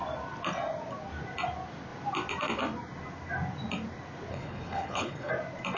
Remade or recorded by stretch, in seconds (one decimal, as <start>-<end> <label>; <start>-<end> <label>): 0.0-4.3 recorded; 4.3-5.3 remade; 5.3-5.8 recorded